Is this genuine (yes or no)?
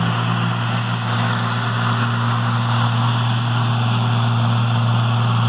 yes